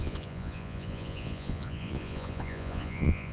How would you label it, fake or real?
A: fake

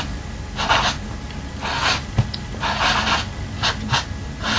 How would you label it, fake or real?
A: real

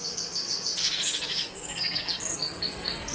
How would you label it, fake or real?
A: fake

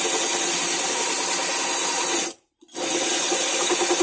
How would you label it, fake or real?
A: real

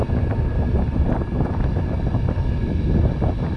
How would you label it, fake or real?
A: real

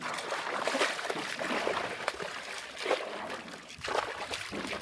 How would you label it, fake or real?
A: fake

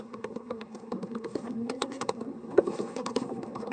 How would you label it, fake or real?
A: fake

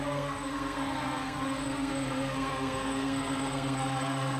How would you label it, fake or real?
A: fake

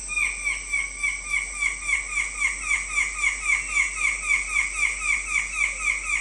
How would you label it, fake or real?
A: real